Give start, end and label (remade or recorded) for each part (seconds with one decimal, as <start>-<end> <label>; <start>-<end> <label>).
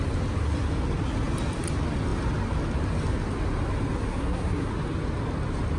0.0-4.1 recorded; 4.1-4.7 remade; 4.7-5.8 recorded